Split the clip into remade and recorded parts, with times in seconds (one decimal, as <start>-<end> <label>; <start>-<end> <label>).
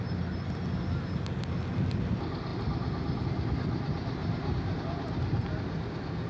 0.0-4.2 recorded; 4.2-4.8 remade; 4.8-6.3 recorded